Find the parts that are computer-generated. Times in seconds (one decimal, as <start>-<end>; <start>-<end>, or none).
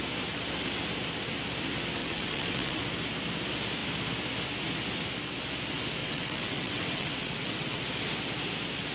2.0-2.8; 6.0-7.8